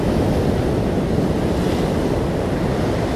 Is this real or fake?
real